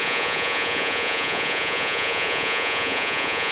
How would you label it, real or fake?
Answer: fake